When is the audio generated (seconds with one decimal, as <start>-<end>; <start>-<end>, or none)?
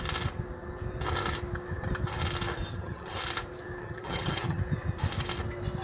2.7-3.2; 3.8-4.6